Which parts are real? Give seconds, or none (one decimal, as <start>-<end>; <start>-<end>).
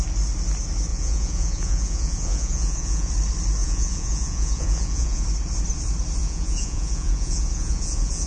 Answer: 0.0-0.9; 3.1-3.6; 5.2-6.2